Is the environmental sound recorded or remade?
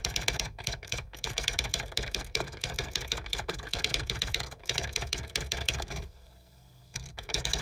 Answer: remade